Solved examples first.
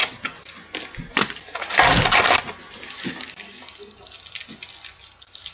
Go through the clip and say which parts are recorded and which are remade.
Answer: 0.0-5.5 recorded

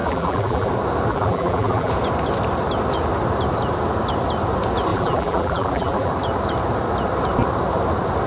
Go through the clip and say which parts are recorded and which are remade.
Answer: 0.0-0.7 remade; 0.7-1.1 recorded; 1.1-1.9 remade; 1.9-4.9 recorded; 4.9-6.1 remade; 6.1-8.3 recorded

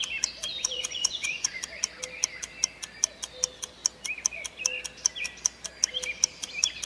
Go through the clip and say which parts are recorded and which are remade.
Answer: 0.0-0.5 recorded; 0.5-1.6 remade; 1.6-6.9 recorded

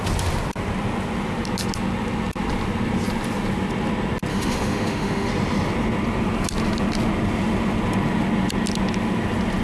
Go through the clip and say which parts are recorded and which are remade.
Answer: 0.0-4.3 recorded; 4.3-5.3 remade; 5.3-9.6 recorded

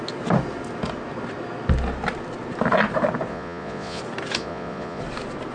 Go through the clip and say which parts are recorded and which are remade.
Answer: 0.0-3.3 recorded; 3.3-4.0 remade; 4.0-4.4 recorded; 4.4-5.0 remade; 5.0-5.5 recorded

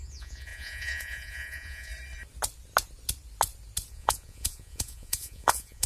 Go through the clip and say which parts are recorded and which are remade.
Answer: 0.0-1.9 remade; 1.9-3.9 recorded; 3.9-5.9 remade

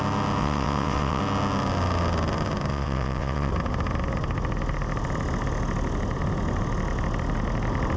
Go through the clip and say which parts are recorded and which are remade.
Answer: 0.0-0.4 recorded; 0.4-1.2 remade; 1.2-2.7 recorded; 2.7-3.5 remade; 3.5-8.0 recorded

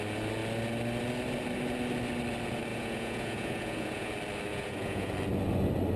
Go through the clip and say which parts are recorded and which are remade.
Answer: 0.0-2.7 recorded; 2.7-4.1 remade; 4.1-4.5 recorded; 4.5-5.1 remade; 5.1-6.0 recorded